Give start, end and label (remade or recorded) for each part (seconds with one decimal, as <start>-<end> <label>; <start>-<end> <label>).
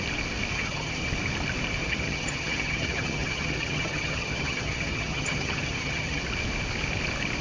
0.0-0.5 recorded; 0.5-1.1 remade; 1.1-1.8 recorded; 1.8-6.2 remade; 6.2-7.4 recorded